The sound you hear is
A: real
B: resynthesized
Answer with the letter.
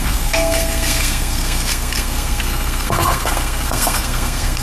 B